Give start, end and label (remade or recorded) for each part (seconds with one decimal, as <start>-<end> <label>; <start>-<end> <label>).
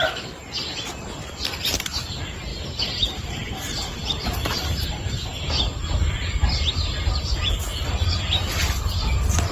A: 0.0-2.5 recorded; 2.5-6.7 remade; 6.7-9.5 recorded